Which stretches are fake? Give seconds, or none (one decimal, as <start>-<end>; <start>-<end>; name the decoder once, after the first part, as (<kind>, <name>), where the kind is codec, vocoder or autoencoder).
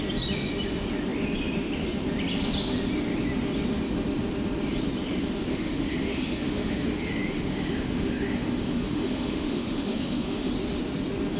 5.5-10.5 (autoencoder, DAC-VAE)